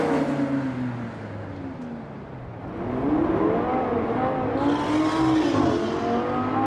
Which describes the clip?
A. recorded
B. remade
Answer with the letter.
A